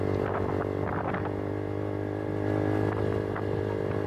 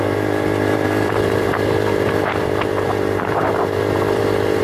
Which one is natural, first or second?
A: first